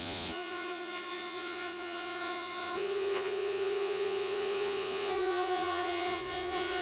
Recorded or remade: remade